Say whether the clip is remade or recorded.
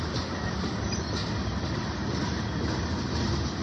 recorded